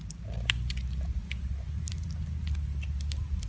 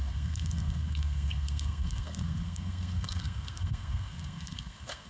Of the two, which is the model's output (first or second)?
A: second